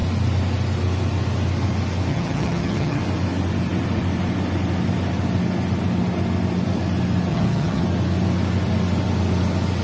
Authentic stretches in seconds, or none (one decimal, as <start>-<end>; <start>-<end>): 0.0-2.1; 3.0-7.3; 7.8-9.8